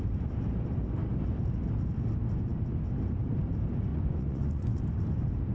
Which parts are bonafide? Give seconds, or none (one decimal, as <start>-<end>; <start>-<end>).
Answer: 0.0-3.9; 4.8-5.5